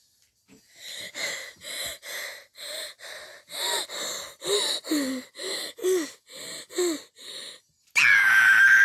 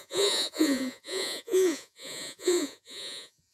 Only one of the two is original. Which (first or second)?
first